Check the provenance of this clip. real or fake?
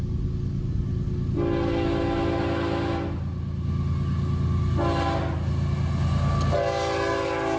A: real